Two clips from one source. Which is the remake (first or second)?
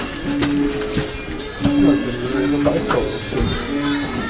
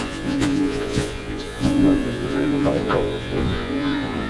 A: second